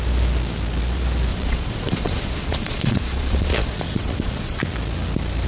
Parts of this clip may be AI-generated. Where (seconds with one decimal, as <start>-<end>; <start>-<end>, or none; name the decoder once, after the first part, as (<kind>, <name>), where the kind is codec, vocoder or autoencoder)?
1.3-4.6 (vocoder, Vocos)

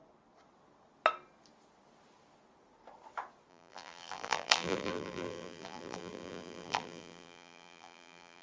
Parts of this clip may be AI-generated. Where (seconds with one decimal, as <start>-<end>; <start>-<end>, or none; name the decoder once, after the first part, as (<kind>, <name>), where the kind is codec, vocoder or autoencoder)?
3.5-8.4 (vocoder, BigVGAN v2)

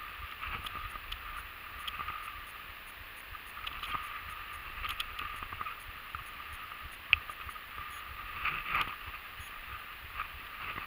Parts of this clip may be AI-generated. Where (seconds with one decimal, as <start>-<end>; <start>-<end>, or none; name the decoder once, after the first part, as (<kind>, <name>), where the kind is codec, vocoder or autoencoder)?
0.0-0.9 (vocoder, BigVGAN v2); 4.6-7.4

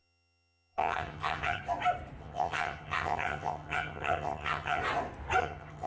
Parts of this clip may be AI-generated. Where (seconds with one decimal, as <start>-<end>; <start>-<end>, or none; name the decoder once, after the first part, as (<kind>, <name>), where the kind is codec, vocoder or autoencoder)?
0.0-1.6 (vocoder, HiFi-GAN); 2.2-4.8; 5.4-5.9

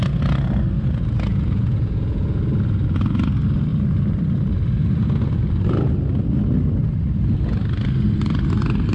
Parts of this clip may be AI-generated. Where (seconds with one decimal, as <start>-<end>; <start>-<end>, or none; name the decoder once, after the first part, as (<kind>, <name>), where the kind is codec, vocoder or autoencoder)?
1.3-2.4 (vocoder, Vocos)